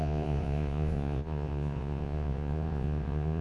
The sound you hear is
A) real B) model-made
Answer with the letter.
B